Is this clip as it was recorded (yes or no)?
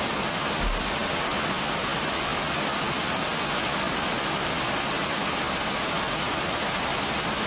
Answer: yes